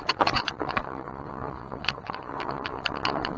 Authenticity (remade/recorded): remade